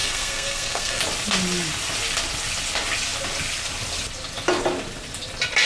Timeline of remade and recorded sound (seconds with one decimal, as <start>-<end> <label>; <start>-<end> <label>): 0.0-1.0 remade; 1.0-5.7 recorded